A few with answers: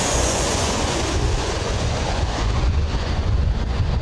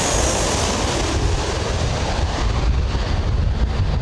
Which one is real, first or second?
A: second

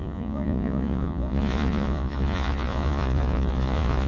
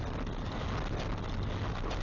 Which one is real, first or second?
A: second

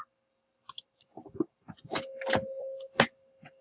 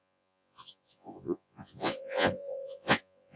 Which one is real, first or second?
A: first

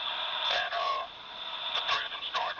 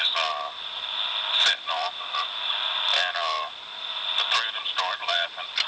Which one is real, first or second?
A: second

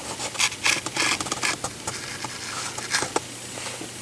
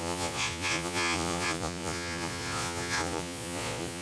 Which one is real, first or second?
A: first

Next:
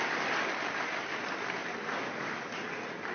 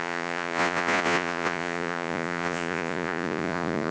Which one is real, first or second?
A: first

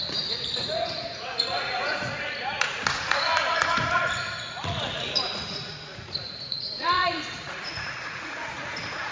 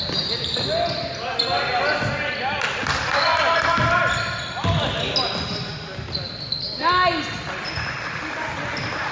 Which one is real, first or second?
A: second